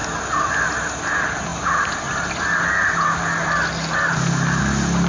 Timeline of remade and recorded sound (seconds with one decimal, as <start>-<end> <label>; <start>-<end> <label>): 0.0-5.1 recorded

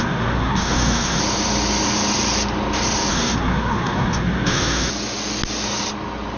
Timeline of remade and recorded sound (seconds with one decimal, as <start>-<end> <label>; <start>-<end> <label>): 0.0-1.2 remade; 1.2-3.1 recorded; 3.1-4.9 remade; 4.9-6.4 recorded

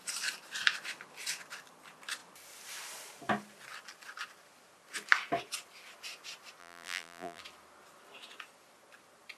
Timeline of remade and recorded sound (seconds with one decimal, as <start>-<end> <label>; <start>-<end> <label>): 0.0-6.6 recorded; 6.6-7.4 remade; 7.4-9.4 recorded